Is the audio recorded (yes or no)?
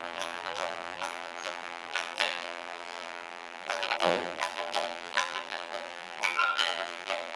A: no